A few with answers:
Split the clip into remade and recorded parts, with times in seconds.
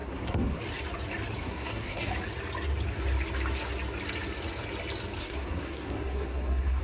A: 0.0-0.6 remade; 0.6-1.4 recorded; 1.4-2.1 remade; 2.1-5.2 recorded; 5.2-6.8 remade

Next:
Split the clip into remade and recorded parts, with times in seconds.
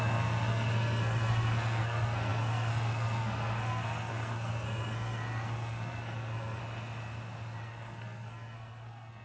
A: 0.0-6.6 remade; 6.6-7.6 recorded; 7.6-9.2 remade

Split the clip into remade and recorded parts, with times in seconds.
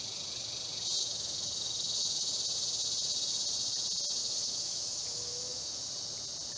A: 0.0-1.0 recorded; 1.0-2.3 remade; 2.3-4.2 recorded; 4.2-5.8 remade; 5.8-6.6 recorded